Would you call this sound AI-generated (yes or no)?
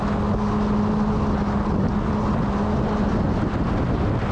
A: no